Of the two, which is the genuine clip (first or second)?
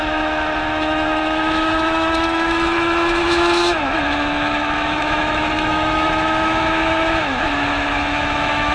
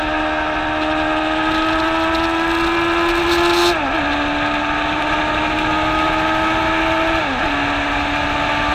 second